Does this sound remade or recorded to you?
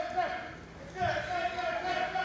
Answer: recorded